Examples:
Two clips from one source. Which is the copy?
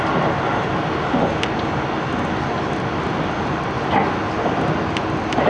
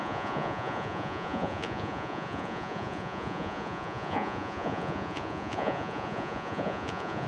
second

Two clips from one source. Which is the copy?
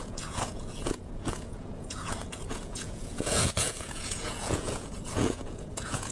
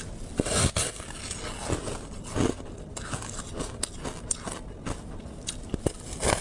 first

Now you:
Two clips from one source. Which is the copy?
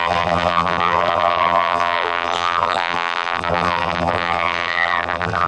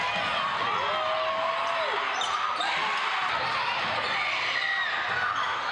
first